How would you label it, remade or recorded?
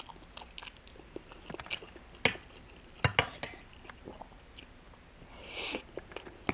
recorded